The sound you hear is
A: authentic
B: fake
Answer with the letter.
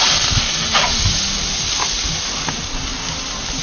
A